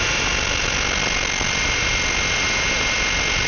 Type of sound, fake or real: real